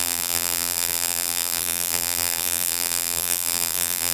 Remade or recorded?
remade